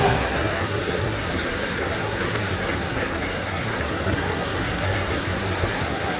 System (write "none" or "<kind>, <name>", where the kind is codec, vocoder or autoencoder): codec, SNAC